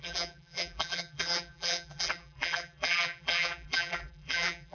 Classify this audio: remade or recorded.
remade